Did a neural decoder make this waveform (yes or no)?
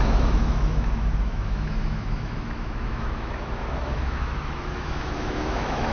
yes